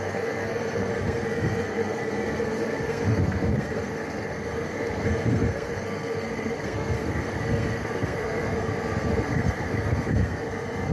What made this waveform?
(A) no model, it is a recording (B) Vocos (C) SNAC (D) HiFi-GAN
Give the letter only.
C